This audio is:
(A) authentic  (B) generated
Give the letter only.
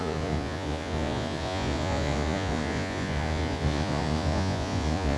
B